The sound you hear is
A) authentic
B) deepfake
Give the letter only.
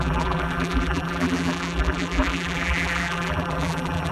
B